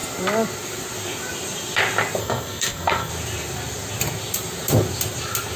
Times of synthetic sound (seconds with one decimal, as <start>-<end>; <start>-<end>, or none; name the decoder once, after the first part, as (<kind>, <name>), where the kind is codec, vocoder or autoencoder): 2.2-3.1 (codec, SNAC)